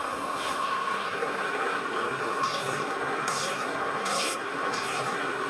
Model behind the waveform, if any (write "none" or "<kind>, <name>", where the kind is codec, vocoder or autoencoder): codec, SNAC